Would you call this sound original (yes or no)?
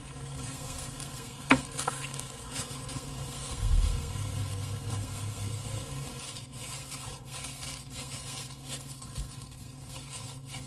no